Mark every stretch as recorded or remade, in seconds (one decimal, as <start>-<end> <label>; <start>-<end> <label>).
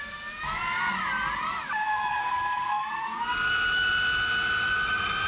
0.0-2.2 recorded; 2.2-2.9 remade; 2.9-5.3 recorded